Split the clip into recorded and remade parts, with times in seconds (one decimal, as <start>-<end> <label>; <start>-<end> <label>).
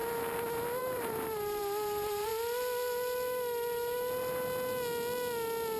0.0-0.8 recorded; 0.8-2.3 remade; 2.3-5.8 recorded